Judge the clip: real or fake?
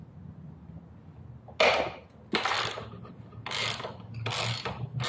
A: real